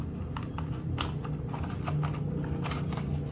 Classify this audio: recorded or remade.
recorded